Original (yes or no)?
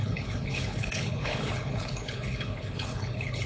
no